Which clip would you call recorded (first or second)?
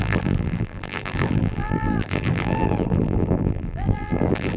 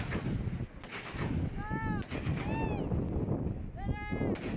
second